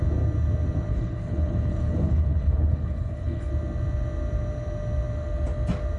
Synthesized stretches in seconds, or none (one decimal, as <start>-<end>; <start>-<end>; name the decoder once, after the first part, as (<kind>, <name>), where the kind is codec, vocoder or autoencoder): 0.9-3.5 (codec, HILCodec)